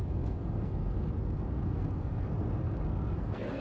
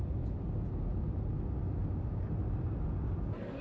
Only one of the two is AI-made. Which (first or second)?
first